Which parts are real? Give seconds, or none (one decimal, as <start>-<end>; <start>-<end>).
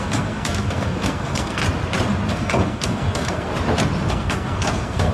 1.6-2.3; 3.5-4.1